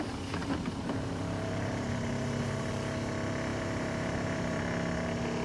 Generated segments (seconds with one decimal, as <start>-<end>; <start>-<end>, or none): 0.4-2.7; 3.5-4.6